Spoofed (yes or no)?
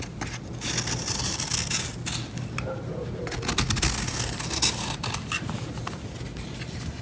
no